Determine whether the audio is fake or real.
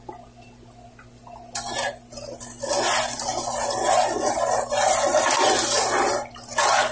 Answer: real